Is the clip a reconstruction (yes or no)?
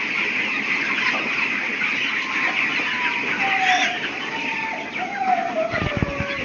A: no